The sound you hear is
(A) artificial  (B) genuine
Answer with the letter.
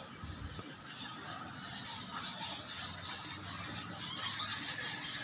B